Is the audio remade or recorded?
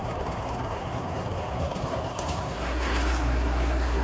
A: remade